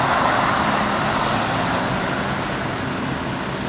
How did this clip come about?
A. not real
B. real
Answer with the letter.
B